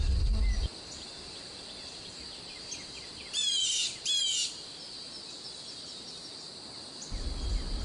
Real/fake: real